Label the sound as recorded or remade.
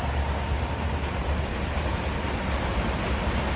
recorded